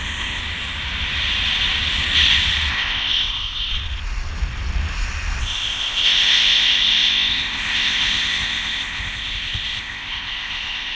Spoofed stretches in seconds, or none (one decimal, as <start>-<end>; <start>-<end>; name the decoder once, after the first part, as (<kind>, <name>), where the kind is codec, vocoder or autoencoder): 0.0-0.4 (codec, ZipCodec); 2.7-3.7; 5.4-10.9